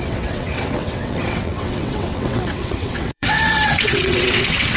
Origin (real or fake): fake